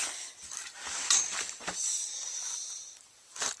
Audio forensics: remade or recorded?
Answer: recorded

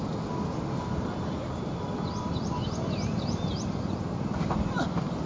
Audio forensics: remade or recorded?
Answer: recorded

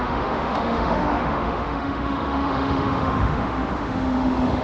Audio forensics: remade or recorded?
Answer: remade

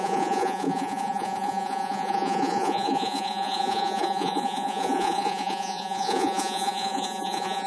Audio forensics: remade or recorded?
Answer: remade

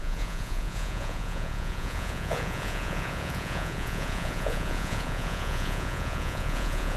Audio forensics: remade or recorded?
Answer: remade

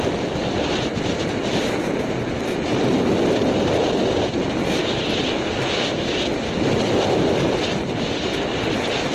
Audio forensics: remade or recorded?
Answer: recorded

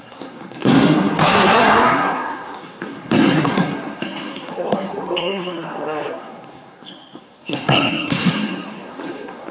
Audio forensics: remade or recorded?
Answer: remade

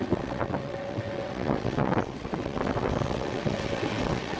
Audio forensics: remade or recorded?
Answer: remade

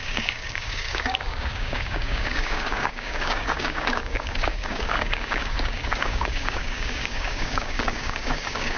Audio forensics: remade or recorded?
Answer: remade